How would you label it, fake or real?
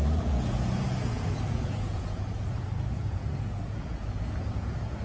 fake